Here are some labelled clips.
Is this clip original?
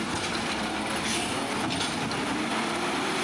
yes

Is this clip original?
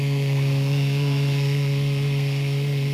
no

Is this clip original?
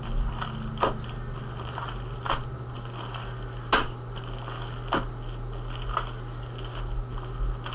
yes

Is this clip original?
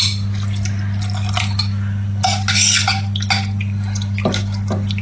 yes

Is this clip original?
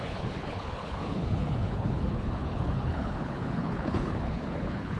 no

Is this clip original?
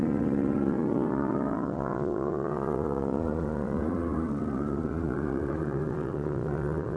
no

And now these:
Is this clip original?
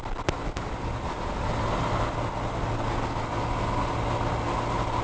yes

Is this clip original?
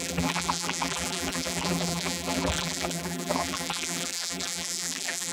no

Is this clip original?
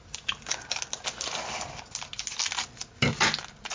yes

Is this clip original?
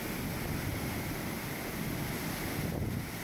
yes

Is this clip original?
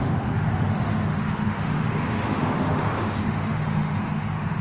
no